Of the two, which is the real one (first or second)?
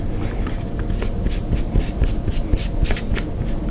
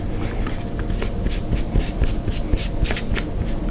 second